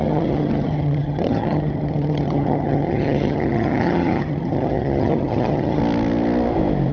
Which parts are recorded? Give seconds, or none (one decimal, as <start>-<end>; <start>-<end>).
5.8-6.9